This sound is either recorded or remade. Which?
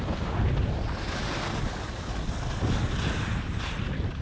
recorded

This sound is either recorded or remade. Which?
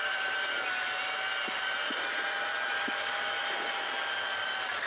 recorded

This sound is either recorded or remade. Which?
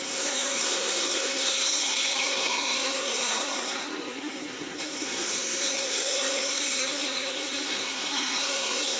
remade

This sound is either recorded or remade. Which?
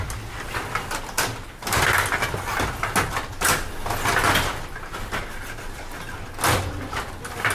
recorded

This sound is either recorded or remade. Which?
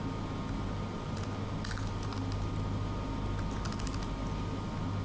recorded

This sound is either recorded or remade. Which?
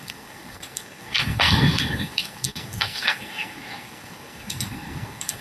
remade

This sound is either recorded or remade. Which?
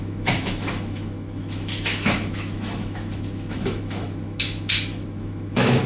remade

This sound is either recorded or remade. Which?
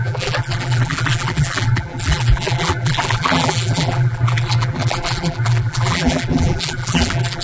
remade